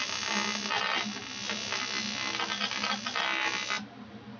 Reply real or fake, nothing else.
real